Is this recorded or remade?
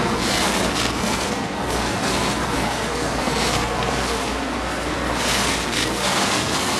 remade